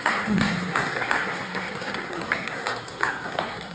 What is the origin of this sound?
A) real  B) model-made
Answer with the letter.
B